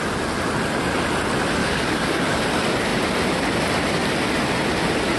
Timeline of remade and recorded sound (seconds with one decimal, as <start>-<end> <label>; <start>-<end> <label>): 0.0-1.6 recorded; 1.6-2.4 remade; 2.4-5.2 recorded